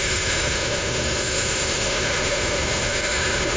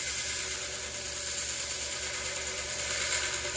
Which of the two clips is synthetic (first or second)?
first